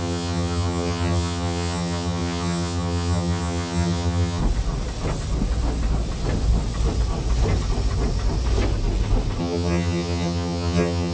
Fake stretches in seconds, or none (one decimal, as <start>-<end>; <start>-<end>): 0.0-4.4; 9.4-11.1